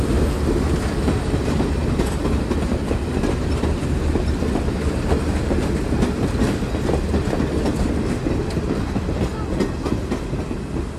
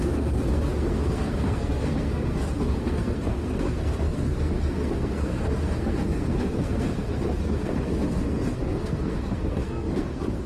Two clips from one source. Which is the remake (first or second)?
second